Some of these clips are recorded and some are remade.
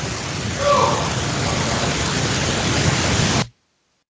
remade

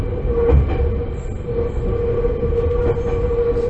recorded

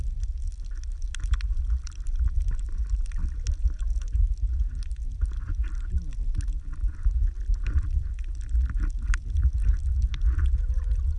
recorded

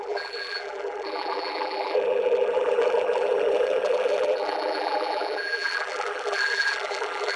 remade